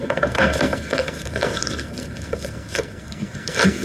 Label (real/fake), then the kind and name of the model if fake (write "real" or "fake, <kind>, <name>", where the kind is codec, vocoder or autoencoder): fake, codec, SNAC